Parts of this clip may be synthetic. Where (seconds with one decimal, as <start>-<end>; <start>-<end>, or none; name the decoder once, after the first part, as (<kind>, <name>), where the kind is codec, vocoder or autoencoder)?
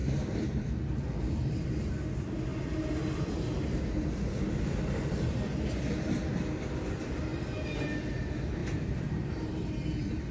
0.0-1.9 (vocoder, BigVGAN v2); 8.6-9.7